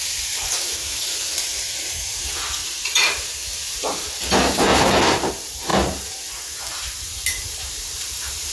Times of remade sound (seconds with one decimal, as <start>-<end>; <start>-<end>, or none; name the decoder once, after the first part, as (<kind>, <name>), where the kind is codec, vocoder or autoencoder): 0.0-4.7 (vocoder, BigVGAN v2); 5.3-5.7; 6.7-8.5